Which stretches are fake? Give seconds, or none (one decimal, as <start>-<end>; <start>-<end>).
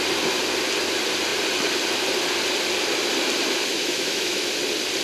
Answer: 3.7-4.6